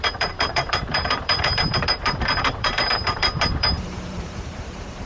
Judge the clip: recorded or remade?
remade